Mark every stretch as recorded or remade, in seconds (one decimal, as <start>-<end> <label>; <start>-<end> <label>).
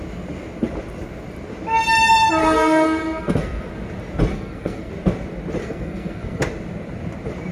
0.0-2.4 recorded; 2.4-3.7 remade; 3.7-4.3 recorded; 4.3-4.9 remade; 4.9-5.6 recorded; 5.6-6.4 remade; 6.4-7.5 recorded